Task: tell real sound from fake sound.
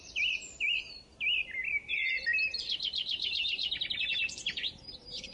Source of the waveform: fake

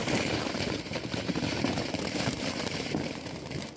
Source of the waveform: fake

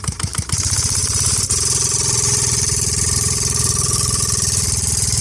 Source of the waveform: fake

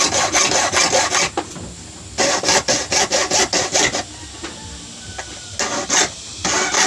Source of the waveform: real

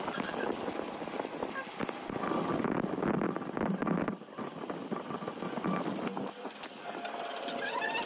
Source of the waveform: real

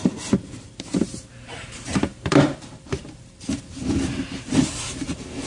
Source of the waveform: fake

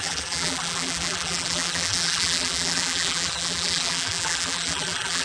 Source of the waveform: fake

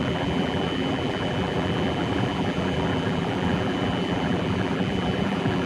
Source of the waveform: fake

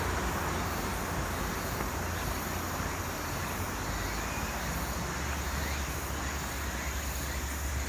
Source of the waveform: real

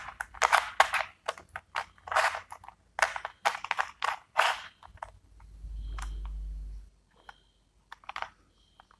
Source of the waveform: real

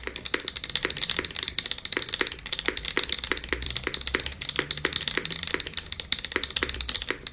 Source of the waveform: fake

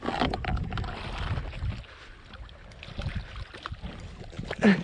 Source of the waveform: real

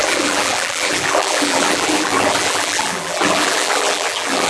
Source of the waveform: fake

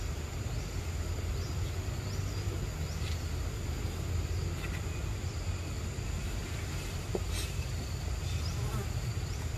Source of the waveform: real